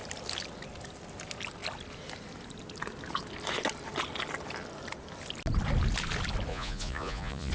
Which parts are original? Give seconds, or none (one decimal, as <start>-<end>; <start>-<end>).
0.0-6.5